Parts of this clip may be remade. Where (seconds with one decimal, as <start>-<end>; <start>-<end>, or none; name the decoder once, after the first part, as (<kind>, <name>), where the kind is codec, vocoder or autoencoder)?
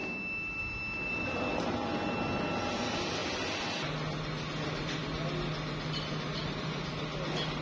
none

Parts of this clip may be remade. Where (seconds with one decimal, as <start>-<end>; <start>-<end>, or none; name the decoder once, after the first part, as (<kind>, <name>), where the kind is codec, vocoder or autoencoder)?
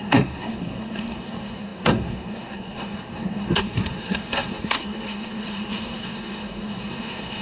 0.0-7.4 (codec, SNAC)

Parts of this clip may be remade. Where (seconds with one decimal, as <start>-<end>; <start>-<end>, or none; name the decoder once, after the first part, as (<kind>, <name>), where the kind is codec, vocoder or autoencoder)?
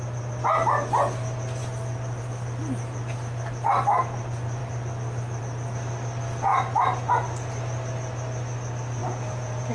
9.0-9.7 (vocoder, Vocos)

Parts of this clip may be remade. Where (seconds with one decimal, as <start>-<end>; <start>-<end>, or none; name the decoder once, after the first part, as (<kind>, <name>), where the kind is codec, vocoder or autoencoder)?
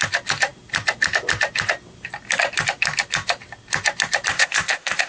4.3-5.1 (codec, ZipCodec)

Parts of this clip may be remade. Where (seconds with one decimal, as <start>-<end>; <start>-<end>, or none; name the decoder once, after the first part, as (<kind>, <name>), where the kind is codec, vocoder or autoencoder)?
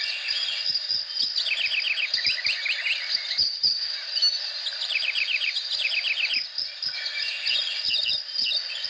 2.9-5.9 (vocoder, BigVGAN v2)